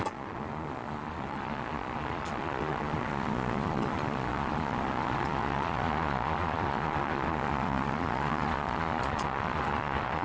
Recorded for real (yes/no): no